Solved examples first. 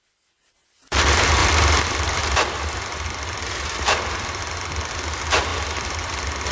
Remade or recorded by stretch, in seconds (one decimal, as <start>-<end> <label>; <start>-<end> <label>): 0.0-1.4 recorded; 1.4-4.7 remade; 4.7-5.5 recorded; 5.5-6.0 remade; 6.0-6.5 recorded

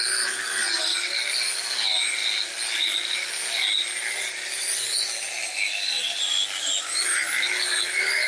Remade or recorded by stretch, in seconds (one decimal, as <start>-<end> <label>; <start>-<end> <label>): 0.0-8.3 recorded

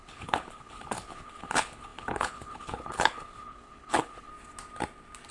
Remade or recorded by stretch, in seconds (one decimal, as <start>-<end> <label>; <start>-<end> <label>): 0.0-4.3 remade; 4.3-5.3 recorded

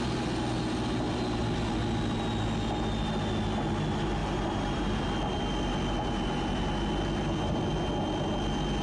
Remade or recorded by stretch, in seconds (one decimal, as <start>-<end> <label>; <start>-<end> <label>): 0.0-4.2 recorded; 4.2-5.0 remade; 5.0-8.8 recorded